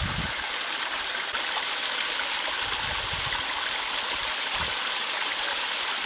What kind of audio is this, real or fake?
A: real